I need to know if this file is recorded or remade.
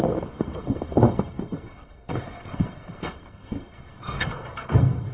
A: remade